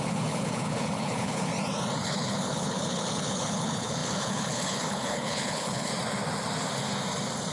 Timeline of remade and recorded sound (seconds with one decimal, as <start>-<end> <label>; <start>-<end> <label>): 0.0-1.5 remade; 1.5-2.0 recorded; 2.0-5.9 remade; 5.9-7.5 recorded